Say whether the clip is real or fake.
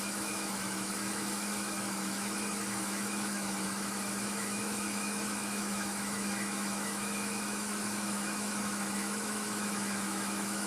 fake